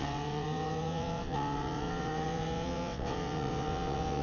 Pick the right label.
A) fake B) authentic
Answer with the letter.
A